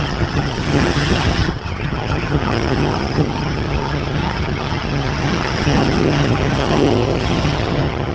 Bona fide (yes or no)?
no